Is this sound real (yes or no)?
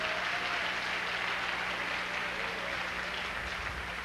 yes